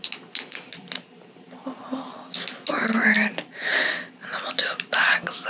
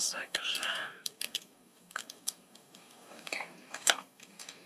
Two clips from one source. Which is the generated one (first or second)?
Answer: second